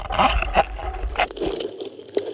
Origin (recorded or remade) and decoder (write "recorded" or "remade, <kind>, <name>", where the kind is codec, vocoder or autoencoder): recorded